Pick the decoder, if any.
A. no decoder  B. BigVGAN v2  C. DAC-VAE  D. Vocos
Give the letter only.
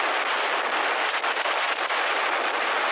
A